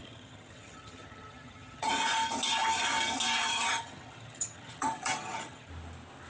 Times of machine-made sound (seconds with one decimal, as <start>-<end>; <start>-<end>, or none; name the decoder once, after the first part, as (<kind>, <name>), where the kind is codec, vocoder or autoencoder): 0.0-1.9 (vocoder, HiFi-GAN); 3.5-5.7